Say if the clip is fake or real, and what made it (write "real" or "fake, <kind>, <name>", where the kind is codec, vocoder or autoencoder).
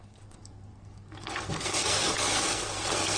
fake, codec, SNAC